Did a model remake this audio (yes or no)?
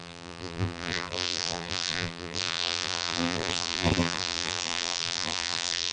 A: yes